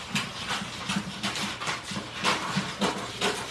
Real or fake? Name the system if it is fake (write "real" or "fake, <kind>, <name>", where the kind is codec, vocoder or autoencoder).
real